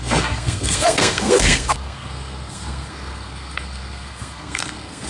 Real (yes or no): no